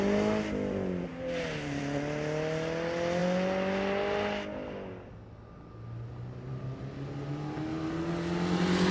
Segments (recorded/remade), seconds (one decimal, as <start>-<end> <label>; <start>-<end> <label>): 0.0-1.1 recorded; 1.1-1.8 remade; 1.8-8.9 recorded